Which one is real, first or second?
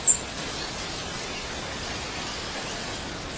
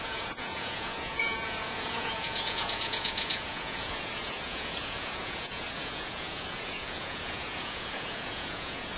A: first